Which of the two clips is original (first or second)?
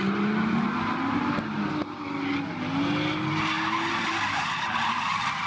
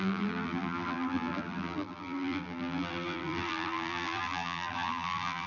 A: first